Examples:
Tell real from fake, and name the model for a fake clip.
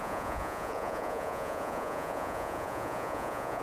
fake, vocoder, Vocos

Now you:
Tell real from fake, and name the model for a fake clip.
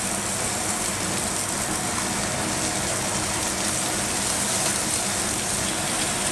real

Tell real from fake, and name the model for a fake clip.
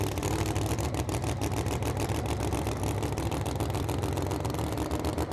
real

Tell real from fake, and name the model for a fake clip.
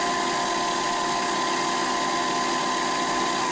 real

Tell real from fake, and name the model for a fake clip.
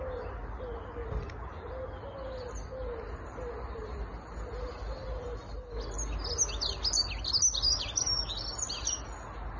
real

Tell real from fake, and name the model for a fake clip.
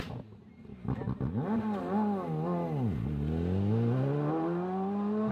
real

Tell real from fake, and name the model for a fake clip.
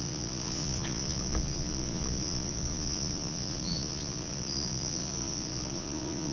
fake, vocoder, Vocos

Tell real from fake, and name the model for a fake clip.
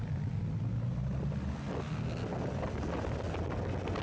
real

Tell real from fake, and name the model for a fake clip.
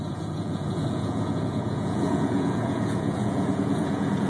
fake, vocoder, Vocos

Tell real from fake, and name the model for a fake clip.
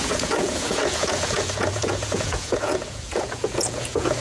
fake, vocoder, Vocos